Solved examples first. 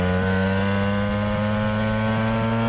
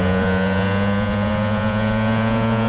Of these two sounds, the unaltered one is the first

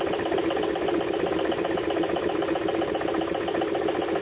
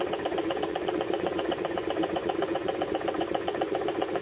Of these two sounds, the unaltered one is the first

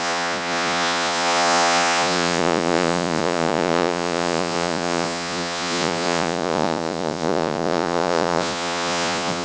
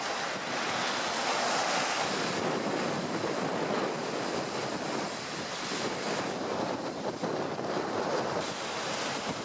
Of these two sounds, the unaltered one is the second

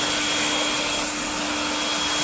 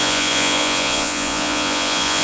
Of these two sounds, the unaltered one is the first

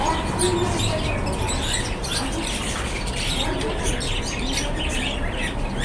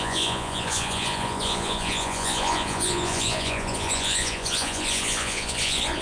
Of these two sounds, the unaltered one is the first